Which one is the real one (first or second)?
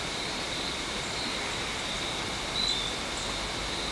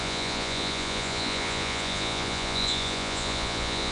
first